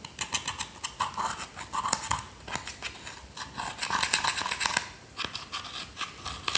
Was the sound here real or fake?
real